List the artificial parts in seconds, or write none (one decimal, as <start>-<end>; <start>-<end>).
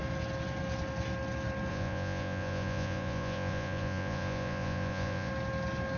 1.7-5.3